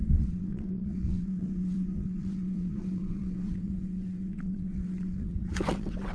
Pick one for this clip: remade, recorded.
remade